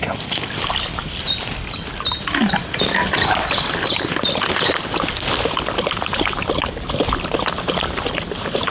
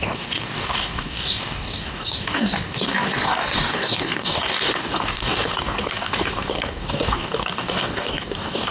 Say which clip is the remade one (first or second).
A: second